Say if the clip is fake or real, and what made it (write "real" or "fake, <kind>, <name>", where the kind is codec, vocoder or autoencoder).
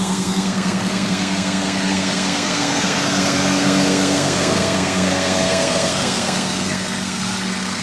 fake, codec, SNAC